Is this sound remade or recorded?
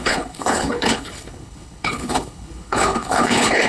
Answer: remade